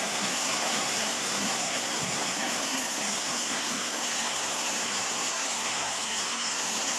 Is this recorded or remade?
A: remade